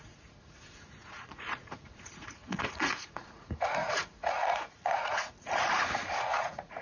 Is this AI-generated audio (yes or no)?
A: yes